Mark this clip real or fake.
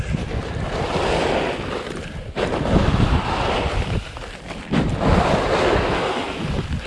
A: fake